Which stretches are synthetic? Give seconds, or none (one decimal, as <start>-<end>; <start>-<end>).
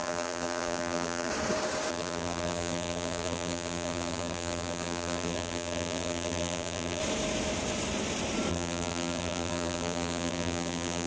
0.0-1.3; 1.9-7.0; 8.5-11.1